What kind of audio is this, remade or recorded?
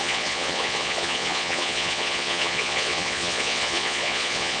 remade